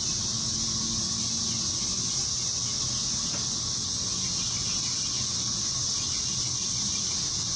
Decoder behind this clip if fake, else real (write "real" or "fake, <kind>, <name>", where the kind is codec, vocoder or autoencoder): real